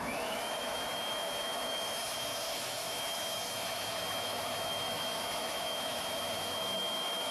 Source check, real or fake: fake